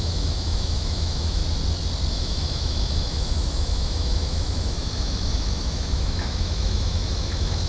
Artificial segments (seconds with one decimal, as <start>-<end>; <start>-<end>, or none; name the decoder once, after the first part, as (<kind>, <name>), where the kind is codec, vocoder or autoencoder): 0.0-1.4 (autoencoder, DAC-VAE); 2.1-7.7